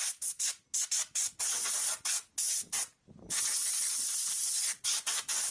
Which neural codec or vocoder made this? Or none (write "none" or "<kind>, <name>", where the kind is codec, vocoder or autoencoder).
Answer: none